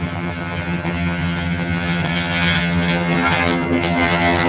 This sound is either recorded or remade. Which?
remade